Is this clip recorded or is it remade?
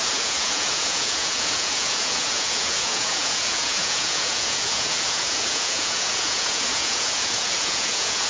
remade